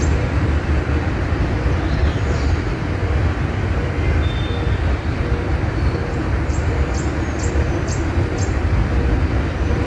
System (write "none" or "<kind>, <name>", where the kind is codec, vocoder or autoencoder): vocoder, BigVGAN v2